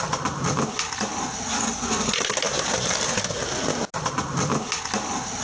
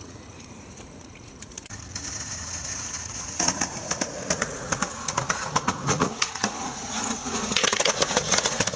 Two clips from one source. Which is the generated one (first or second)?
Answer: second